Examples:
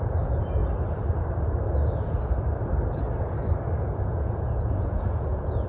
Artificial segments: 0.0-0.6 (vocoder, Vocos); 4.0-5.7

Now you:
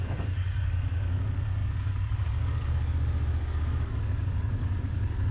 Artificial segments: 0.0-5.3 (codec, DAC)

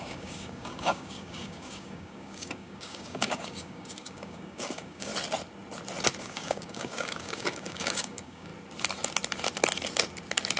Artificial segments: 0.0-5.1 (codec, DAC); 6.2-8.5